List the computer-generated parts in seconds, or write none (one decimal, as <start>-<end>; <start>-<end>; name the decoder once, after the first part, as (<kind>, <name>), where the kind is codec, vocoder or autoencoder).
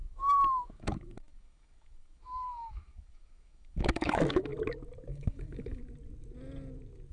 0.0-4.5 (autoencoder, DAC-VAE); 5.1-5.8